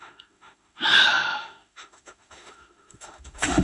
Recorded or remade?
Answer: remade